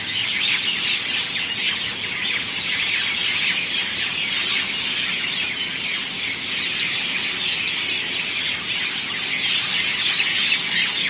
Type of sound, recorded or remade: recorded